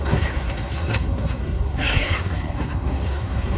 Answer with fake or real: fake